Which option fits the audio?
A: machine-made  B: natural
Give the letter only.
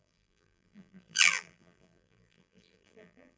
A